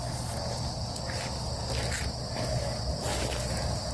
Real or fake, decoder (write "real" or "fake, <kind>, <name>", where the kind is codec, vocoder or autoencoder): real